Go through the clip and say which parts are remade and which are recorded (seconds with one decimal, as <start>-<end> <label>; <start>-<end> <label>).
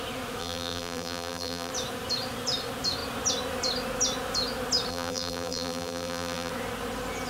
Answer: 0.0-0.4 recorded; 0.4-1.7 remade; 1.7-4.9 recorded; 4.9-6.5 remade; 6.5-7.3 recorded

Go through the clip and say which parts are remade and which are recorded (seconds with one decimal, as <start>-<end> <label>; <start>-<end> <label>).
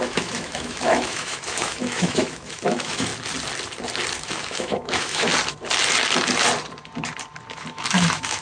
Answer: 0.0-3.1 remade; 3.1-4.1 recorded; 4.1-5.3 remade; 5.3-7.7 recorded; 7.7-8.4 remade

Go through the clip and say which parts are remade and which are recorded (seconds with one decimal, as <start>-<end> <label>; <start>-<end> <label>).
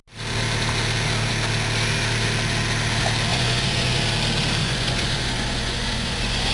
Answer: 0.0-3.3 recorded; 3.3-4.0 remade; 4.0-4.6 recorded; 4.6-6.5 remade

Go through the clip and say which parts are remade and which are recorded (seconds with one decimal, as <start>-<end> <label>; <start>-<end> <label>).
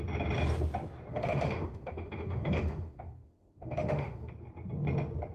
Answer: 0.0-1.1 recorded; 1.1-4.3 remade; 4.3-5.3 recorded